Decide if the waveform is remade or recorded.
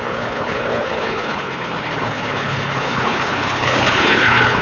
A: remade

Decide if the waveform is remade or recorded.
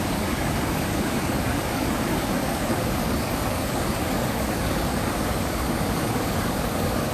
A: remade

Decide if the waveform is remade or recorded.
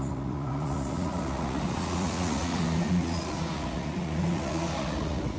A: remade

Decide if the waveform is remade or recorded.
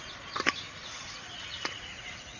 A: remade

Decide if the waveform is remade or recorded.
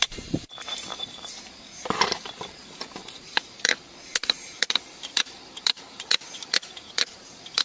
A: remade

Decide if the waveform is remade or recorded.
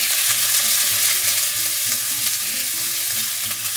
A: recorded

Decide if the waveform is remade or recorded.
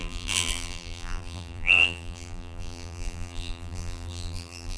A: remade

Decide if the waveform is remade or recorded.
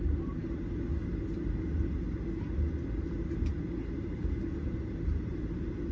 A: recorded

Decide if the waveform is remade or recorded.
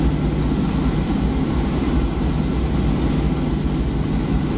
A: recorded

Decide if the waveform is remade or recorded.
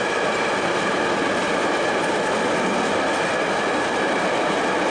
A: recorded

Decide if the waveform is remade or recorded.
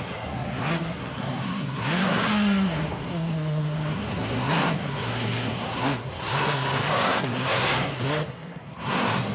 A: remade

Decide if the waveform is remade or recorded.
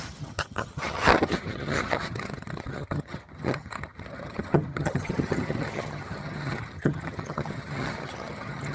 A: remade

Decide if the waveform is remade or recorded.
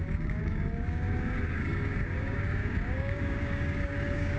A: remade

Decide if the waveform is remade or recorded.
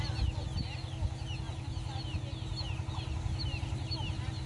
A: recorded